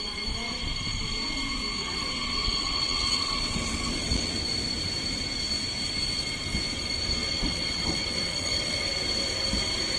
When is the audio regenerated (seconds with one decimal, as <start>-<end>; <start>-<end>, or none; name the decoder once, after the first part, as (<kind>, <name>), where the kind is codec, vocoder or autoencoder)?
1.8-4.4 (vocoder, WaveNeXt); 7.2-8.9